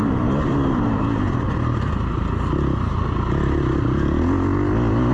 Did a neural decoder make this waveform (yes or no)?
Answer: no